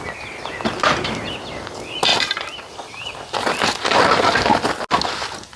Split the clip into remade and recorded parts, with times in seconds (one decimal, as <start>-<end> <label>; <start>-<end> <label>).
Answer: 0.0-5.6 recorded